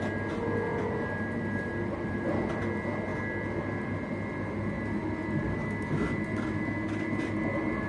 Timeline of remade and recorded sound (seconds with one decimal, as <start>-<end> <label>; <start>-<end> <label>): 0.0-7.9 recorded

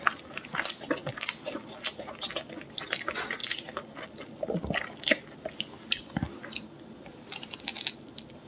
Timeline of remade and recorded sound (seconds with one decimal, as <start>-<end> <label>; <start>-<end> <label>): 0.0-8.5 recorded

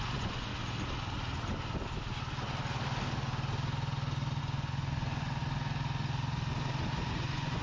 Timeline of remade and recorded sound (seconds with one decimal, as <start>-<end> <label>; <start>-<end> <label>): 0.0-0.5 remade; 0.5-4.4 recorded; 4.4-5.4 remade; 5.4-7.1 recorded; 7.1-7.6 remade